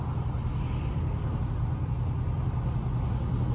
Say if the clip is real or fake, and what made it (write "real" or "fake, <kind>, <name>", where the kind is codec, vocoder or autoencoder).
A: real